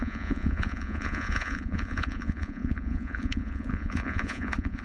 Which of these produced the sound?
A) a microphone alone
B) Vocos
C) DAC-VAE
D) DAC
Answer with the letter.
B